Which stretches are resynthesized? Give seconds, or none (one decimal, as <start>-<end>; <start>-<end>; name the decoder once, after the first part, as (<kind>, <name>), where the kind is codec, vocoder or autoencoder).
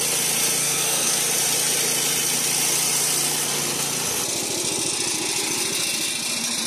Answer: 0.6-1.2 (codec, SNAC)